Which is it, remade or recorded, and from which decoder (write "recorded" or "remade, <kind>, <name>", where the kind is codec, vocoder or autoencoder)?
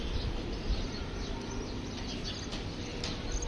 recorded